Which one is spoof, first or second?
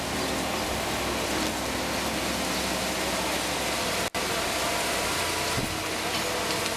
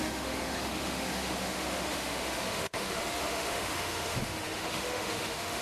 second